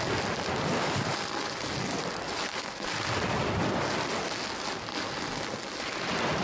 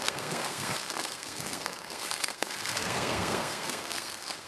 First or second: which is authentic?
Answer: first